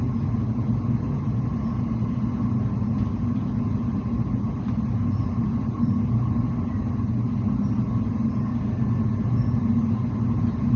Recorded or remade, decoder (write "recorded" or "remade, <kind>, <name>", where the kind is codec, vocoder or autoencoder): recorded